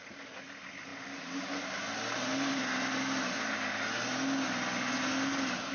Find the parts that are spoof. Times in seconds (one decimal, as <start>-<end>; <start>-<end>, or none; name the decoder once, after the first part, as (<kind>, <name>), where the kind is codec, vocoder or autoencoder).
none